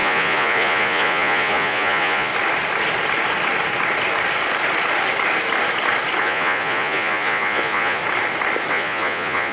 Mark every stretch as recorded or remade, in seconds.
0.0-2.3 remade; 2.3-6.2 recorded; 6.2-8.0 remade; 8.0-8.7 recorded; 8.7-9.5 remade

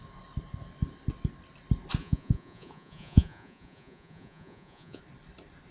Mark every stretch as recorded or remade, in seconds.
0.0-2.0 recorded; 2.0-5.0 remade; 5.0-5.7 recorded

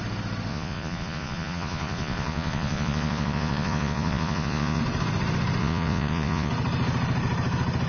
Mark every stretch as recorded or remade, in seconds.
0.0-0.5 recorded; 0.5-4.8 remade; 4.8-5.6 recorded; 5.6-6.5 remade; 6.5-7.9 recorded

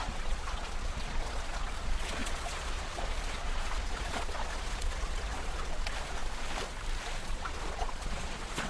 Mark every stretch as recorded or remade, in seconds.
0.0-6.2 remade; 6.2-7.2 recorded; 7.2-8.7 remade

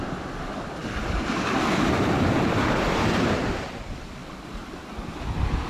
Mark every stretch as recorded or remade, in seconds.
0.0-5.7 recorded

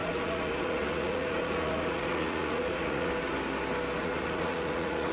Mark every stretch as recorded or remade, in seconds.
0.0-3.1 remade; 3.1-4.0 recorded; 4.0-5.1 remade

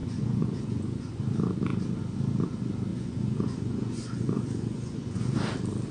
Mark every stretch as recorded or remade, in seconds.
0.0-1.2 remade; 1.2-2.9 recorded; 2.9-5.3 remade; 5.3-5.9 recorded

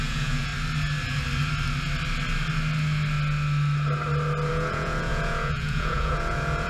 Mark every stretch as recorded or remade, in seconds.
0.0-0.5 remade; 0.5-4.5 recorded; 4.5-6.7 remade